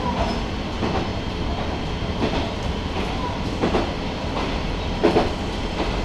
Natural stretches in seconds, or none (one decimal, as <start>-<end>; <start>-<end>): 0.0-1.1; 1.6-6.0